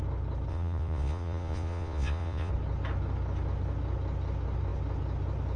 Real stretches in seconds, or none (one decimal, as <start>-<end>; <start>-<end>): 0.0-0.5; 2.5-5.6